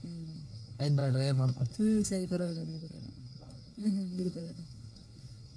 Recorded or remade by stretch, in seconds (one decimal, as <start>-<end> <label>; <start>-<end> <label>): 0.0-5.6 remade